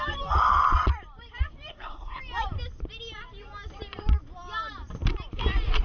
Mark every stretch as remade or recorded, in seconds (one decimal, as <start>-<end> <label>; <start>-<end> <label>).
0.0-1.7 recorded; 1.7-2.2 remade; 2.2-5.8 recorded